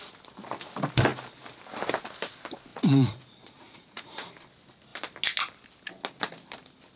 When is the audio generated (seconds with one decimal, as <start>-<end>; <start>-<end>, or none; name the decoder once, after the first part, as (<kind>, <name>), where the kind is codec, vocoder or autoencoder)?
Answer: 2.7-4.3 (vocoder, Vocos)